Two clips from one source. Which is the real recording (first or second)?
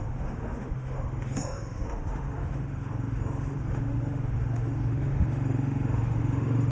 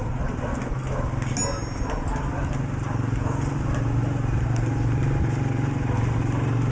second